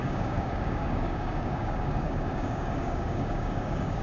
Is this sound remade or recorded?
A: remade